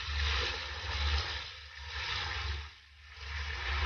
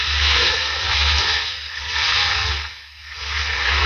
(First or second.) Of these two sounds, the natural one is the first